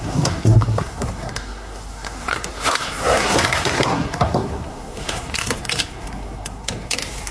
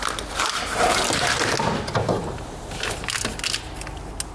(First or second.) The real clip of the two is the second